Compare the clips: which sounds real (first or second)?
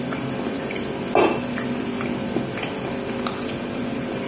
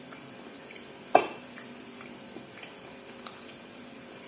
first